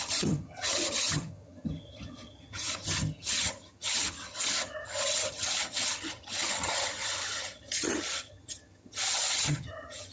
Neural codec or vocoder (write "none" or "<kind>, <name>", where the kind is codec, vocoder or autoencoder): vocoder, HiFi-GAN